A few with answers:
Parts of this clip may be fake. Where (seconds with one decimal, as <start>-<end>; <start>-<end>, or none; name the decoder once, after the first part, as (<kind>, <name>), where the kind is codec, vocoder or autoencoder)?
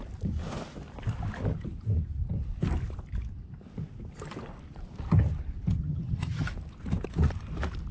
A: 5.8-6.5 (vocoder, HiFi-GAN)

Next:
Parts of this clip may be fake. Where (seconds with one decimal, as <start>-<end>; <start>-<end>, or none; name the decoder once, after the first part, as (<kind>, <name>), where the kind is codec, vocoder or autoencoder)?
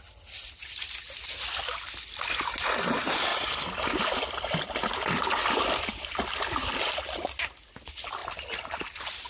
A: 3.3-5.8 (vocoder, BigVGAN v2); 8.2-8.8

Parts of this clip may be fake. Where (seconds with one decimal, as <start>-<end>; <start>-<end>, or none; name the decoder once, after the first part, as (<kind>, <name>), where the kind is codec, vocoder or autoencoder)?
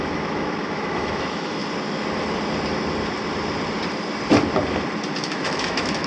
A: 0.0-1.6 (autoencoder, DAC-VAE); 5.3-6.1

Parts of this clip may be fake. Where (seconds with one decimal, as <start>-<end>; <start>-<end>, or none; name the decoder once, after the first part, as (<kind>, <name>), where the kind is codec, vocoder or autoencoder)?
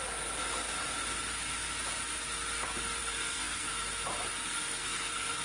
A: 3.0-3.7 (codec, SNAC); 4.4-5.4